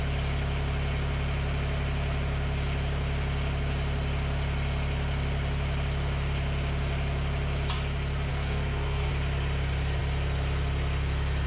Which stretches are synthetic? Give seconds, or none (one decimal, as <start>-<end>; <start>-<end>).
8.3-9.1